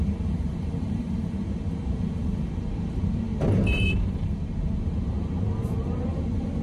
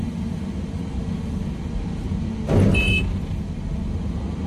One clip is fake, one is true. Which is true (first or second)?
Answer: second